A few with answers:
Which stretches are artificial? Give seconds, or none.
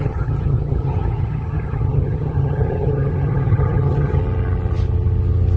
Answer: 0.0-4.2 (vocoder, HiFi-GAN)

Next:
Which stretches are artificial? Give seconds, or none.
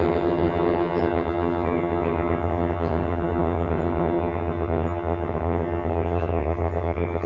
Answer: 0.0-7.3 (vocoder, HiFi-GAN)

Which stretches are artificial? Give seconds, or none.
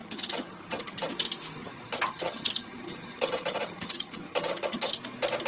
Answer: 0.0-1.1 (vocoder, HiFi-GAN); 1.6-4.9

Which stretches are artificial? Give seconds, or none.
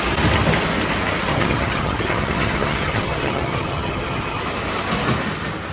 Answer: 1.3-4.4 (vocoder, HiFi-GAN)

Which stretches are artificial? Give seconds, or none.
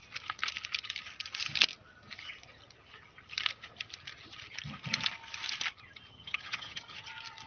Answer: 6.1-7.1 (vocoder, HiFi-GAN)